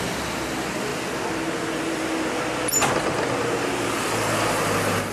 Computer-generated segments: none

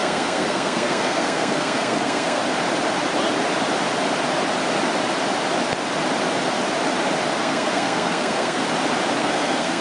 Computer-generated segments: 0.0-2.4 (codec, SNAC); 7.4-8.6; 9.2-9.8

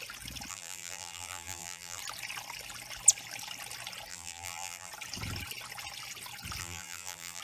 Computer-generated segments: 0.5-2.0 (vocoder, BigVGAN v2); 4.1-4.9; 6.6-7.4